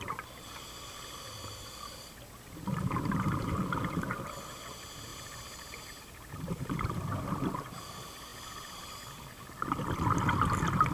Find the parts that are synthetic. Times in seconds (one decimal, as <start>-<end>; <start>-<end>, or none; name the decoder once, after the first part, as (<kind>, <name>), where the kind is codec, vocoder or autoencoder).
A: 5.1-6.8 (vocoder, BigVGAN v2)